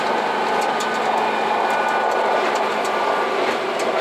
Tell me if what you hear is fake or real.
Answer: real